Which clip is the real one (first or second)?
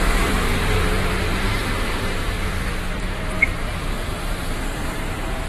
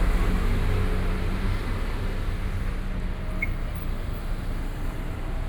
second